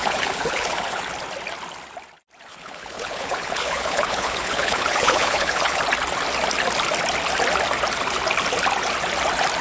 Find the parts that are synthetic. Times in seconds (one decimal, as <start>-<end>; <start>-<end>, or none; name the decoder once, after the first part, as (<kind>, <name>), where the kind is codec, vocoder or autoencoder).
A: 0.0-1.0 (codec, HILCodec); 2.5-5.8